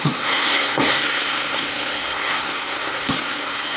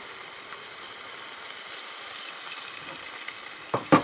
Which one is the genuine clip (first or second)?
second